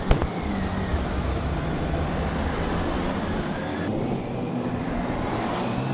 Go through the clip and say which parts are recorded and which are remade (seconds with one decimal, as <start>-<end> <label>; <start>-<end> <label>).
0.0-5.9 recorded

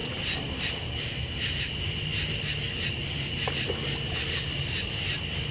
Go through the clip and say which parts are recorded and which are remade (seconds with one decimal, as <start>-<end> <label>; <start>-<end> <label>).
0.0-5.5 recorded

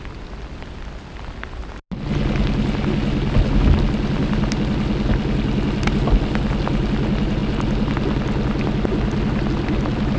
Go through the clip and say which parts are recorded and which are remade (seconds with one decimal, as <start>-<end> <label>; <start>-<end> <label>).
0.0-10.2 recorded